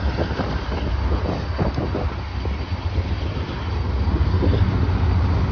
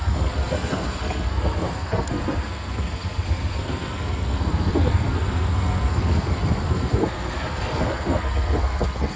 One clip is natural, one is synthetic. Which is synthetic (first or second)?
second